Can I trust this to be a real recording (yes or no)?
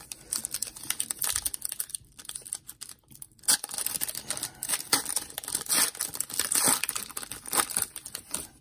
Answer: yes